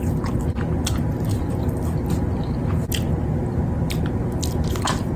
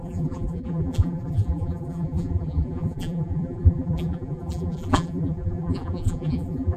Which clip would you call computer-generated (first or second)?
second